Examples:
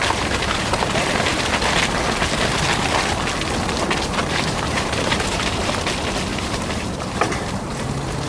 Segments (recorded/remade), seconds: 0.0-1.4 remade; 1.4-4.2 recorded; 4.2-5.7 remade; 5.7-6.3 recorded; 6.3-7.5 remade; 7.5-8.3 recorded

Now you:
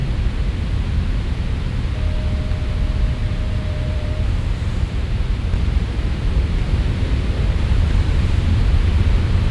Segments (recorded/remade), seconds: 0.0-3.2 recorded; 3.2-6.1 remade; 6.1-6.6 recorded; 6.6-8.9 remade; 8.9-9.5 recorded

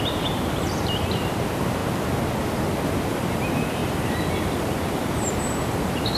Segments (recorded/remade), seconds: 0.0-1.8 remade; 1.8-3.3 recorded; 3.3-3.8 remade; 3.8-4.6 recorded; 4.6-6.2 remade